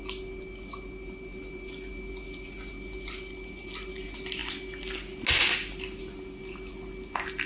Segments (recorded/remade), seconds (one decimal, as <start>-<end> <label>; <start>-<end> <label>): 0.0-7.5 recorded